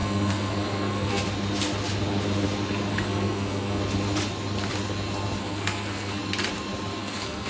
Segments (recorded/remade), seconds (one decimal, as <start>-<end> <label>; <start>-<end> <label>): 0.0-1.2 remade; 1.2-2.9 recorded; 2.9-3.8 remade; 3.8-5.4 recorded; 5.4-6.2 remade; 6.2-7.0 recorded; 7.0-7.5 remade